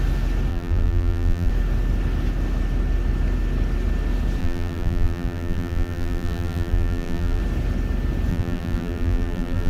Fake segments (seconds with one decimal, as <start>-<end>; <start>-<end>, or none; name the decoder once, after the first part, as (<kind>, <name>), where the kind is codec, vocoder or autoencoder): 0.5-1.5 (vocoder, BigVGAN v2); 4.4-7.4; 8.3-9.7